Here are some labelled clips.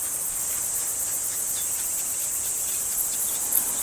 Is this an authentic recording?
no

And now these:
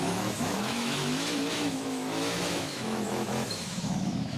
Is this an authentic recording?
no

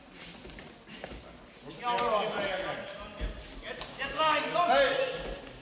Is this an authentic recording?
yes